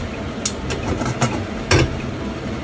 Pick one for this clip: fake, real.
real